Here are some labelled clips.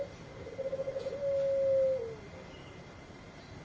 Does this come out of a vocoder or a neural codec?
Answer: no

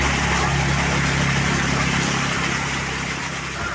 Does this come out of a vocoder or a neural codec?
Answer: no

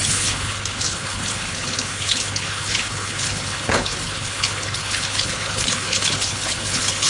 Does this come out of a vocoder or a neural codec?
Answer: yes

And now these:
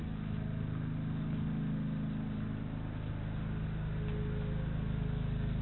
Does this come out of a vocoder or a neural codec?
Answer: no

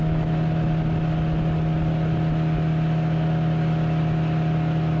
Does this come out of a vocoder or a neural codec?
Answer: no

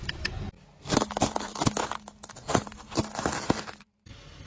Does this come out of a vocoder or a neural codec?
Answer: no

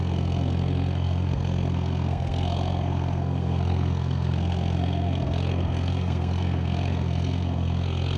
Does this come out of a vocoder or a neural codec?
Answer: yes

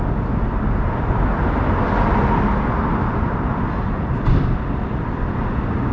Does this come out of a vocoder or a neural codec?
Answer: no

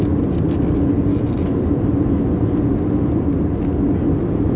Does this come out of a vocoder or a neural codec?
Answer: no